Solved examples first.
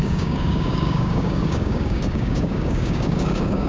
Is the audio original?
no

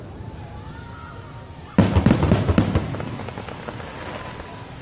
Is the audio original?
yes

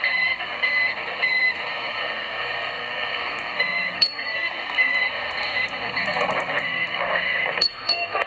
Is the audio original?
no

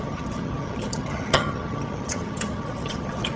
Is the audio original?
no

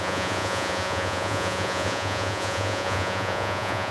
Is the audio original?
no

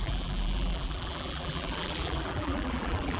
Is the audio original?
no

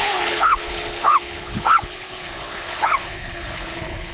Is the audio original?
no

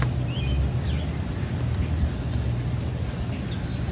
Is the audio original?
yes